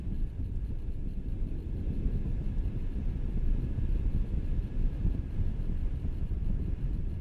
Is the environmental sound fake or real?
real